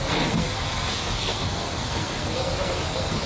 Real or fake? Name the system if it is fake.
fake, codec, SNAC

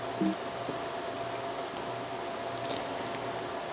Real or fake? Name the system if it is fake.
real